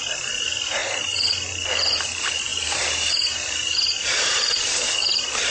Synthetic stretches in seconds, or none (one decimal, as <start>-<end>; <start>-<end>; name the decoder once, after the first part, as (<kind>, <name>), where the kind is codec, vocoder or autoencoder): 2.5-4.9 (vocoder, BigVGAN v2)